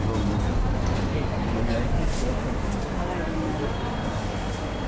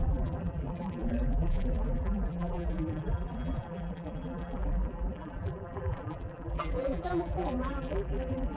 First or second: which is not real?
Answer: second